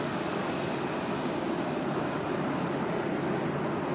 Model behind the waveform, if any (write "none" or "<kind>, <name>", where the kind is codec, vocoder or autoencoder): none